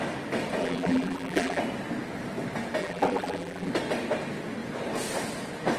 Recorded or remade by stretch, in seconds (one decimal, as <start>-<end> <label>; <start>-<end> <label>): 0.0-0.6 recorded; 0.6-1.6 remade; 1.6-2.8 recorded; 2.8-3.7 remade; 3.7-5.8 recorded